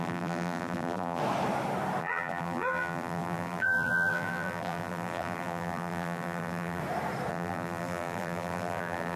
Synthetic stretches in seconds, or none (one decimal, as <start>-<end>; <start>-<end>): 0.0-1.2; 2.0-6.8; 7.3-9.2